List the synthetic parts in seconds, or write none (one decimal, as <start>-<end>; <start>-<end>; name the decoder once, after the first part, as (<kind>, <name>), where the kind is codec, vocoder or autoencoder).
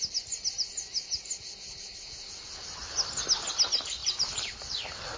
4.0-4.8 (vocoder, BigVGAN v2)